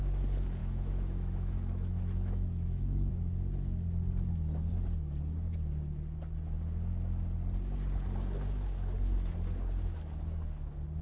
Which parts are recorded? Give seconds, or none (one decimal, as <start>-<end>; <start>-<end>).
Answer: 0.0-0.6; 3.1-11.0